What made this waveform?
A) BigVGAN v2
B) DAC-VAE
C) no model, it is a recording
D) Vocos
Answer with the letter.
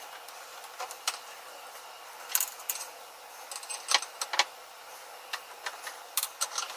C